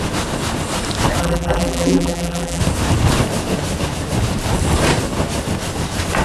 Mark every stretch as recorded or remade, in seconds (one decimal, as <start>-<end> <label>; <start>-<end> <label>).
0.0-1.2 recorded; 1.2-2.6 remade; 2.6-6.2 recorded